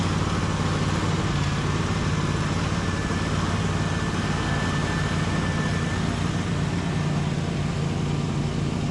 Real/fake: real